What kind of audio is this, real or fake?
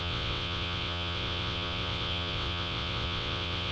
fake